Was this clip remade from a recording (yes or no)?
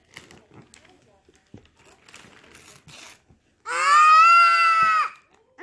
no